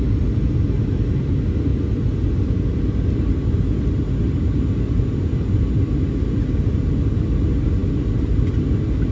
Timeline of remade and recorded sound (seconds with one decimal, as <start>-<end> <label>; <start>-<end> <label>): 0.0-9.1 recorded